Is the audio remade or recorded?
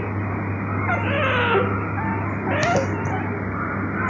recorded